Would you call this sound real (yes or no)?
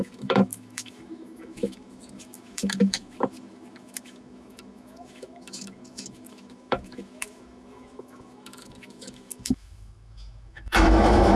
no